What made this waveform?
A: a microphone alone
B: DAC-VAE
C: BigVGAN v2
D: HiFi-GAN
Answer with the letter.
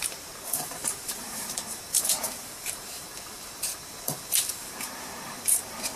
C